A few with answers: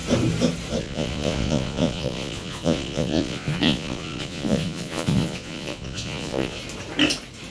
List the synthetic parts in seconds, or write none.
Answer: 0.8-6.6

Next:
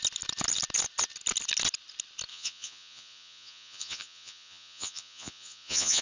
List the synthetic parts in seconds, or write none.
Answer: 2.3-6.0

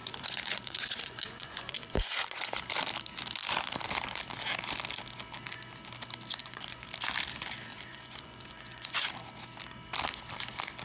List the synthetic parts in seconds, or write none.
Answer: 0.0-2.6; 6.4-6.9; 7.7-9.1